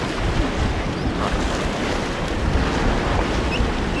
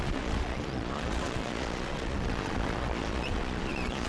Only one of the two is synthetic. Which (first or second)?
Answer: second